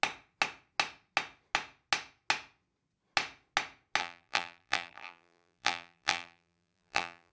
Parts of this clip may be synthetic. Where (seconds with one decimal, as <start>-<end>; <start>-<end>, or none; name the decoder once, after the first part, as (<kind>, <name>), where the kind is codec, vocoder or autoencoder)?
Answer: 4.0-7.3 (vocoder, BigVGAN v2)